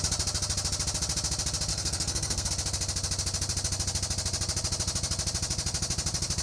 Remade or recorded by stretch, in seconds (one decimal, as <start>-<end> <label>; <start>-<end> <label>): 0.0-1.7 recorded; 1.7-2.5 remade; 2.5-6.4 recorded